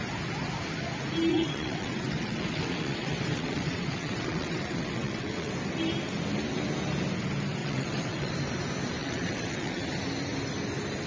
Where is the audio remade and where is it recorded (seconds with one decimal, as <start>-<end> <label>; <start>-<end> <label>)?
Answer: 0.0-1.3 recorded; 1.3-5.5 remade; 5.5-7.6 recorded; 7.6-8.3 remade; 8.3-9.0 recorded; 9.0-9.8 remade; 9.8-11.1 recorded